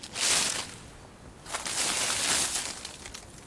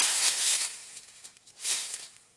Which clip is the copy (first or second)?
second